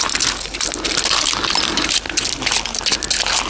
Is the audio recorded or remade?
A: recorded